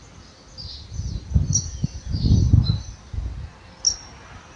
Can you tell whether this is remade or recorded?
recorded